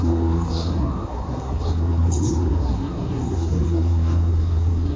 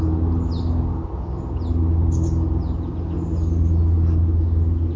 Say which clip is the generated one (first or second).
first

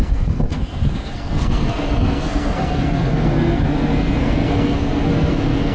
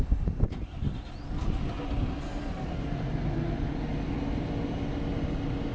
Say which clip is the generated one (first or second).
first